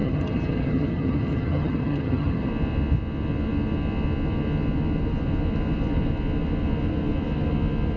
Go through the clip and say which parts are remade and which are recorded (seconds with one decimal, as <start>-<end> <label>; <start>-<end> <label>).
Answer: 0.0-2.5 remade; 2.5-8.0 recorded